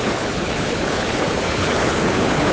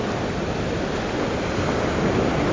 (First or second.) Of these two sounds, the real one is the second